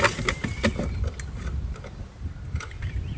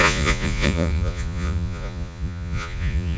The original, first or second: first